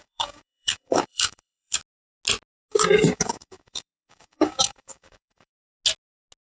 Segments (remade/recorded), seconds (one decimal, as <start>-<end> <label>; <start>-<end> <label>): 0.0-1.8 remade; 1.8-2.7 recorded; 2.7-5.5 remade; 5.5-6.5 recorded